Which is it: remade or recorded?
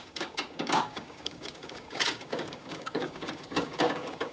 remade